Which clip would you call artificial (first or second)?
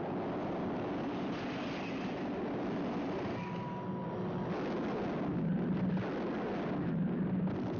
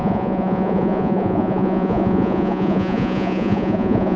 second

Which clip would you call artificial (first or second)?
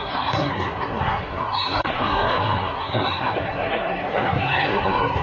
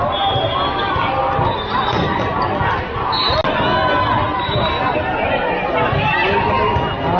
first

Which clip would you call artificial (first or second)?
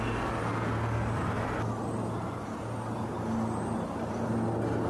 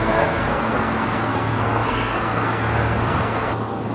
second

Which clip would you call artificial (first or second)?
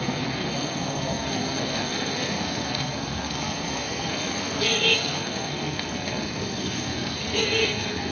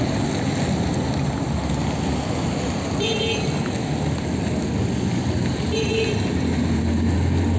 first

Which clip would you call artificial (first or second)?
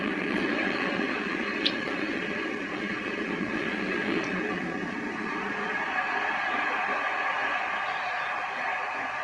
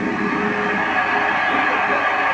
first